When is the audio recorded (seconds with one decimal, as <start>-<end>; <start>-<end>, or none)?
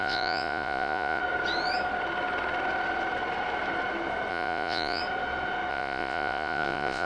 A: 1.2-4.3; 5.0-5.7